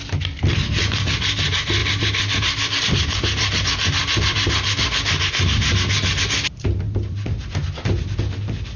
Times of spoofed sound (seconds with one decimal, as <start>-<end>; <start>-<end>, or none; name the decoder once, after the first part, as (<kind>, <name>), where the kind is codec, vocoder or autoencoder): none